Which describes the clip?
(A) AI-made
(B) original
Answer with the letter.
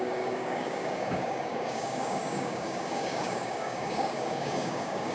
A